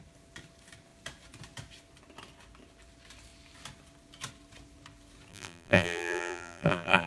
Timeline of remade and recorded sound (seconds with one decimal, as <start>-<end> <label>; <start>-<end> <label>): 0.0-5.3 recorded; 5.3-7.1 remade